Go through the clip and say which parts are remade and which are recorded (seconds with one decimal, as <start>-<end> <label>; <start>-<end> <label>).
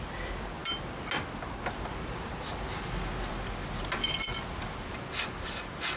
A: 0.0-6.0 recorded